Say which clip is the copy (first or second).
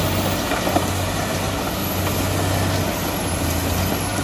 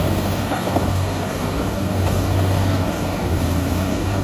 second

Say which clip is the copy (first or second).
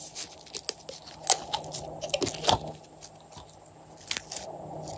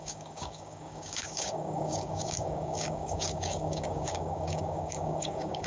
second